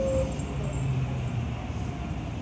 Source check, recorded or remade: recorded